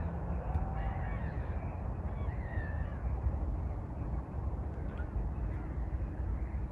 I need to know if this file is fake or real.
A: real